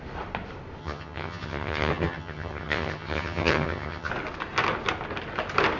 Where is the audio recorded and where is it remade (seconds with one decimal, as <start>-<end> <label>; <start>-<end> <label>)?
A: 0.0-0.8 recorded; 0.8-4.1 remade; 4.1-5.8 recorded